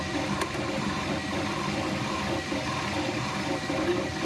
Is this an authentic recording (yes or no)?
yes